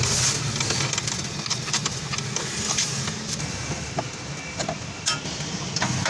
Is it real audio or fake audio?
real